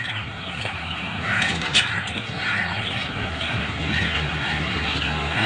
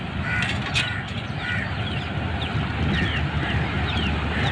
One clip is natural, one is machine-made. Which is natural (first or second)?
second